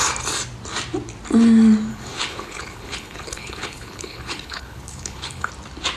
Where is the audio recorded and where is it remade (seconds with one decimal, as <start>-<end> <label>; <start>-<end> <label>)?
0.0-1.9 recorded; 1.9-5.5 remade; 5.5-6.0 recorded